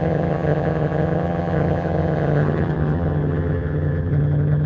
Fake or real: fake